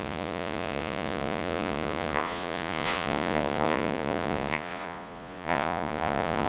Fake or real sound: fake